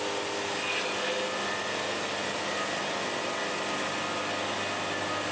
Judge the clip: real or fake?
real